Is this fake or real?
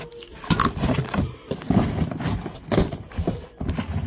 real